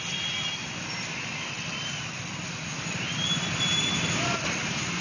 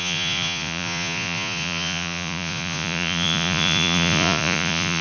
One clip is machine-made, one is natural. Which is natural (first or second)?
first